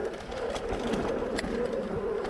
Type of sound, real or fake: real